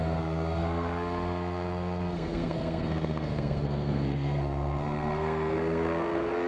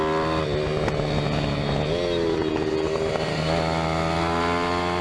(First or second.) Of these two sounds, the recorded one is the second